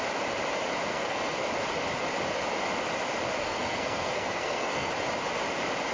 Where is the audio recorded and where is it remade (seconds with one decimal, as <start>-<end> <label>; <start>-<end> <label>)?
0.0-0.9 recorded; 0.9-1.5 remade; 1.5-3.4 recorded; 3.4-4.9 remade; 4.9-5.9 recorded